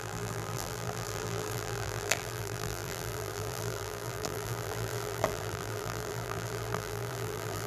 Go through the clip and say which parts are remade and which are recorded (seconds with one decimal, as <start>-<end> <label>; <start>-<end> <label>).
0.0-7.7 remade